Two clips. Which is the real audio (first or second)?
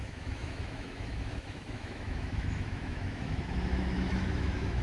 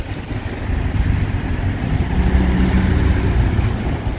second